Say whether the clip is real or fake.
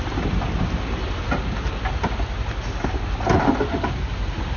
real